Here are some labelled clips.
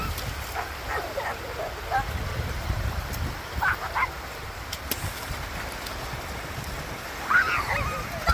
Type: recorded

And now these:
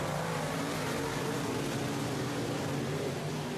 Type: recorded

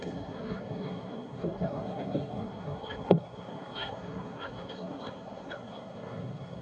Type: remade